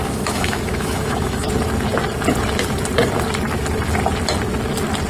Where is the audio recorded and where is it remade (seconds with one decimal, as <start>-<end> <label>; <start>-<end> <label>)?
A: 0.0-1.5 remade; 1.5-5.1 recorded